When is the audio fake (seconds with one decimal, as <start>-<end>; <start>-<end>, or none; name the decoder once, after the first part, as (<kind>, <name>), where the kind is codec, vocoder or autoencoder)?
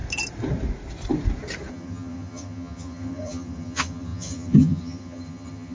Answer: 1.7-5.7 (vocoder, HiFi-GAN)